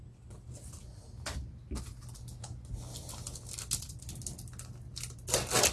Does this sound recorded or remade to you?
recorded